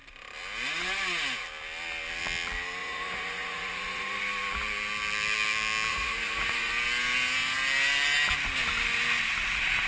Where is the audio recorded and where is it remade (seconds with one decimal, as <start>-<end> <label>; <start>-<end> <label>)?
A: 0.0-2.8 recorded; 2.8-4.2 remade; 4.2-5.9 recorded; 5.9-6.7 remade; 6.7-9.9 recorded